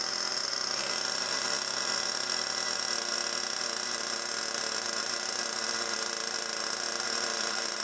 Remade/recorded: recorded